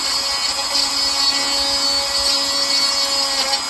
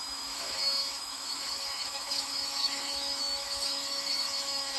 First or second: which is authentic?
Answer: first